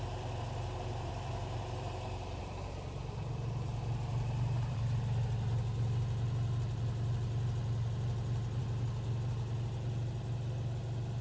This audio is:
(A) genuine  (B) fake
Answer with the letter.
B